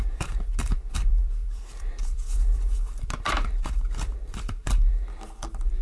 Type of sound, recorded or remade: remade